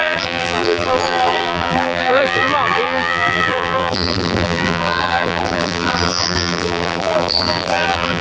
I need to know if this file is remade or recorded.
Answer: remade